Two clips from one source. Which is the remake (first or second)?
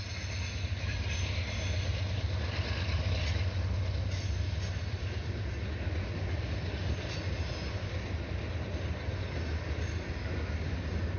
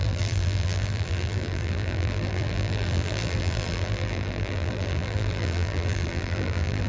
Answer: second